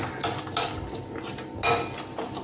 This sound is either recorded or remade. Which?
recorded